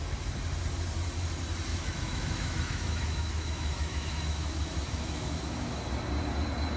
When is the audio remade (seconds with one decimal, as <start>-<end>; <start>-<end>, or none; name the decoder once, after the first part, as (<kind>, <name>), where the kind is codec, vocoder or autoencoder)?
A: 1.7-5.8 (autoencoder, DAC-VAE)